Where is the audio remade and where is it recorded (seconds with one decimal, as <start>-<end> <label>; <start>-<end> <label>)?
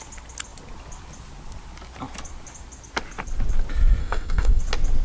0.0-4.0 recorded; 4.0-4.6 remade; 4.6-5.0 recorded